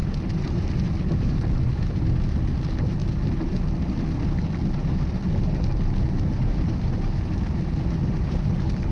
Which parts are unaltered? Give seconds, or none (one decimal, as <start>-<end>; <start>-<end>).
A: 0.0-0.7; 3.0-5.4